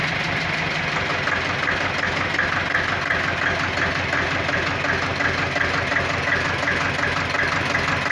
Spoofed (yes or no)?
no